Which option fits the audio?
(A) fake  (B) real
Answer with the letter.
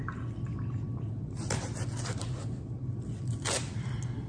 B